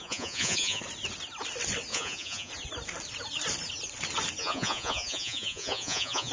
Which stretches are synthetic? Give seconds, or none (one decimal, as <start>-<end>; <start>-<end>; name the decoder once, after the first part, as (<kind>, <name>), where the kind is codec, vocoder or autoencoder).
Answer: 0.0-0.8 (vocoder, Vocos); 1.9-2.5; 4.4-6.3